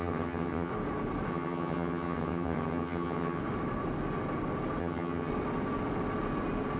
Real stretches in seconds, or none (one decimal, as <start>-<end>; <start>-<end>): 0.7-1.3; 3.4-4.8; 5.3-6.8